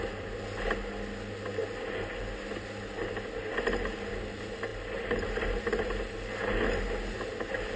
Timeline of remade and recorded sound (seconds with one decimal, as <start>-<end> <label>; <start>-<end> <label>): 0.0-7.8 recorded